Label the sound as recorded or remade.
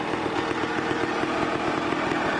recorded